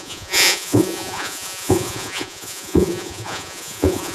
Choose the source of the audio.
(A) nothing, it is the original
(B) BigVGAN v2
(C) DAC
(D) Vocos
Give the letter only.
D